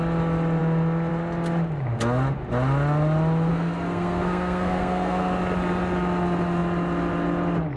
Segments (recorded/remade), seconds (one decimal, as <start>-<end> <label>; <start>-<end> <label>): 0.0-3.5 recorded; 3.5-5.3 remade; 5.3-7.8 recorded

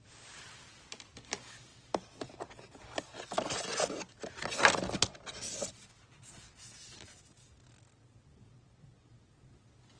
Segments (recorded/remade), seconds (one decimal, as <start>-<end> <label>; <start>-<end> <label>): 0.0-10.0 recorded

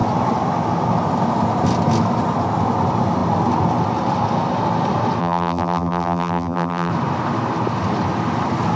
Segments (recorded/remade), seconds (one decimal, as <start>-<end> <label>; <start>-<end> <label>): 0.0-5.2 recorded; 5.2-6.9 remade; 6.9-8.8 recorded

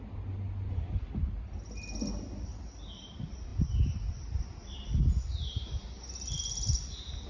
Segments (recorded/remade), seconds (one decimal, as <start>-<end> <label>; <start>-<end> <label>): 0.0-7.3 recorded

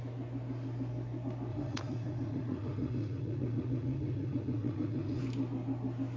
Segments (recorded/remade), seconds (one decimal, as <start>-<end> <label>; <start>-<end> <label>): 0.0-1.5 recorded; 1.5-5.2 remade; 5.2-6.2 recorded

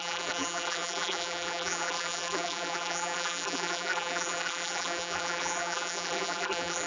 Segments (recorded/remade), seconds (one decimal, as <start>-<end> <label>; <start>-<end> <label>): 0.0-6.9 remade